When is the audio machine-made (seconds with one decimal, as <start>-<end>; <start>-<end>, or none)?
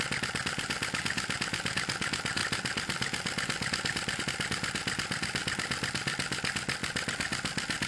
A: none